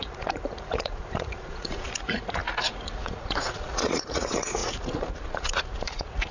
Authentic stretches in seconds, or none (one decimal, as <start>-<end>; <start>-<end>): none